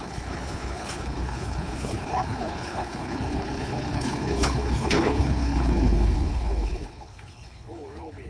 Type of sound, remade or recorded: remade